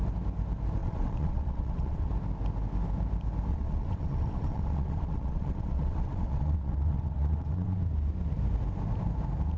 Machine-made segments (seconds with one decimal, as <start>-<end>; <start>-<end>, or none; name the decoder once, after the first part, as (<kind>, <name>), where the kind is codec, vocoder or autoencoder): 0.8-2.1 (vocoder, WaveNeXt); 3.5-7.8